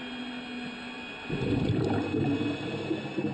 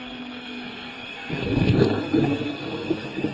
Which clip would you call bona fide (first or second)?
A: first